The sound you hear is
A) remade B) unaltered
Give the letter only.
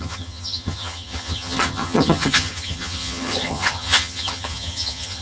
A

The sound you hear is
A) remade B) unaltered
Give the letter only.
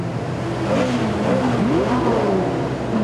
B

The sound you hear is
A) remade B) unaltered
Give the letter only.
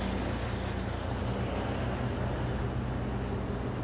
B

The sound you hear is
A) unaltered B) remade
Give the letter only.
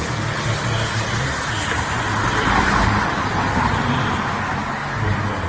A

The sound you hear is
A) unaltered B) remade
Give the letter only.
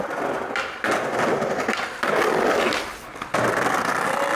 A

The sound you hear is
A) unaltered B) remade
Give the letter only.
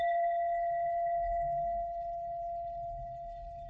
B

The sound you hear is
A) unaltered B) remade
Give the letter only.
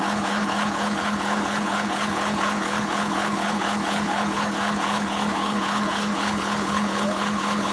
B